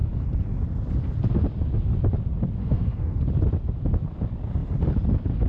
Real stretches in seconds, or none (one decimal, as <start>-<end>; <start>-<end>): 0.0-2.6; 3.2-5.5